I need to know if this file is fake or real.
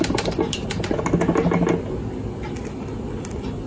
real